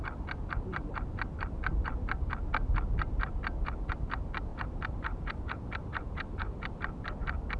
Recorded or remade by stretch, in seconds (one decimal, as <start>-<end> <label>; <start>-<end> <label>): 0.0-4.5 recorded; 4.5-6.8 remade; 6.8-7.6 recorded